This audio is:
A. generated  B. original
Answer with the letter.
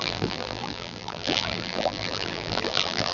A